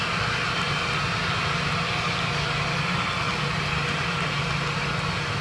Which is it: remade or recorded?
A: recorded